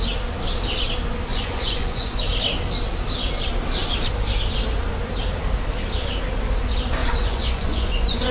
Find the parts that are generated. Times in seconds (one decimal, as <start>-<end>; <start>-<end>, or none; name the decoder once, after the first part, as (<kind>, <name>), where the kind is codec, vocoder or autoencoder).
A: 1.3-2.2 (vocoder, Vocos); 7.0-8.3